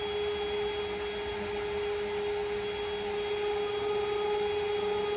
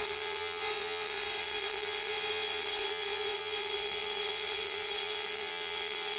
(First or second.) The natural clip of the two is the first